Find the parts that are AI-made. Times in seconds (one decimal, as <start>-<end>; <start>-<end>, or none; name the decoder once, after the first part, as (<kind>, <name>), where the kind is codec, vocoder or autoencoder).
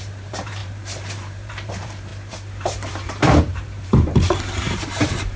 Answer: 0.0-5.4 (vocoder, BigVGAN v2)